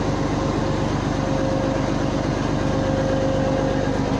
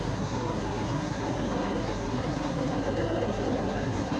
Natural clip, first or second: first